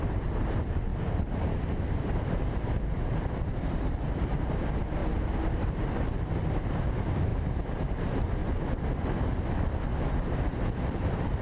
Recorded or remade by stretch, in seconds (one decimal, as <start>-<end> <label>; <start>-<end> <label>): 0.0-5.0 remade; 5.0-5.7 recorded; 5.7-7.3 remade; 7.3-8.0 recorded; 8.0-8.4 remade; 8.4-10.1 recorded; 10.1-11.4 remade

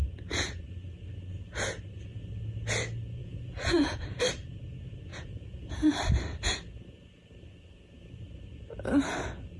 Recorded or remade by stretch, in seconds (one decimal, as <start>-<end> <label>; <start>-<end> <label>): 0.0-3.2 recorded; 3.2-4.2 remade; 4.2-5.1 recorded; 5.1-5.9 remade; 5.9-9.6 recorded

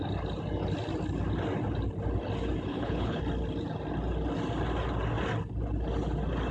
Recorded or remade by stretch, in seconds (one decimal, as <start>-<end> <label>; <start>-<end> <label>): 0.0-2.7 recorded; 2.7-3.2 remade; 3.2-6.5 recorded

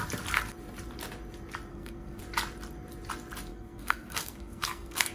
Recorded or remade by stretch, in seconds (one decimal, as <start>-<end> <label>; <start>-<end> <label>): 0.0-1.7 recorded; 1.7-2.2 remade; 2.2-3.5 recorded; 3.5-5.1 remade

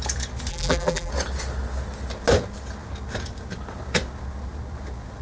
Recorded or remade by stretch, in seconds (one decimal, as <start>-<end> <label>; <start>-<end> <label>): 0.0-0.5 recorded; 0.5-1.1 remade; 1.1-5.2 recorded